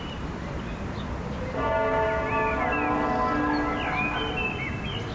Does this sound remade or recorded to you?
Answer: recorded